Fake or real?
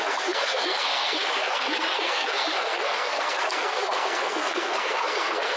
fake